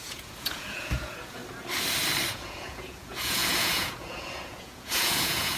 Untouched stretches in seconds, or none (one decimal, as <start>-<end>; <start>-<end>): 1.4-2.3